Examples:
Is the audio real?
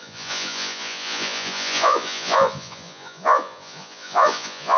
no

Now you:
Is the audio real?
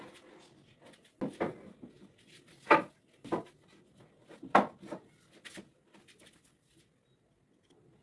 yes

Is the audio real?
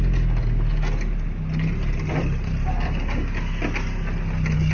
yes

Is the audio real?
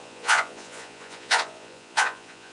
no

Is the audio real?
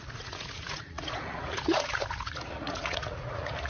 no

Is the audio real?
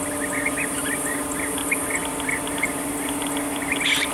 yes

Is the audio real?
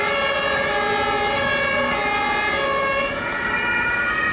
yes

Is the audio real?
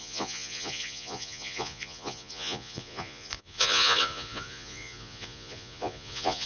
no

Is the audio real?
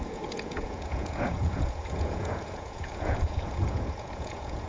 no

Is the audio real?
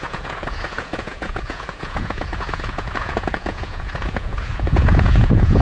no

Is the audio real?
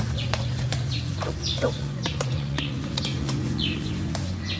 no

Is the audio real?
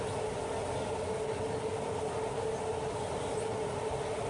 yes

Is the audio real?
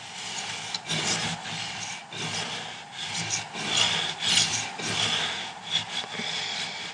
yes